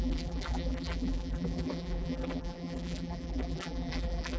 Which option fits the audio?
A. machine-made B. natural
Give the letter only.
A